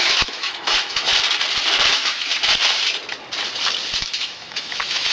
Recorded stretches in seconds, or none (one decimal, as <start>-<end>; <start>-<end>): 1.1-1.9; 2.3-4.0